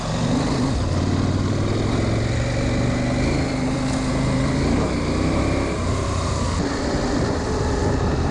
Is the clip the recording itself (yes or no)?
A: yes